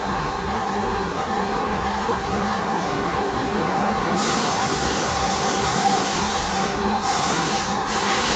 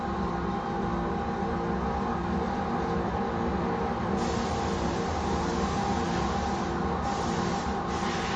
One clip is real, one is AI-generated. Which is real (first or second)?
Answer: second